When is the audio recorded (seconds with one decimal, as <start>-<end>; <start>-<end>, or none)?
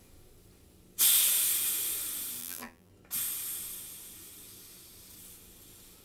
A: 0.0-2.4; 2.9-6.0